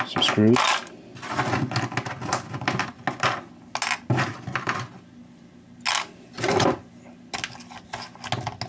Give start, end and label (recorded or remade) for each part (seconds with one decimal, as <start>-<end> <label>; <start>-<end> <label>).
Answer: 0.0-8.7 recorded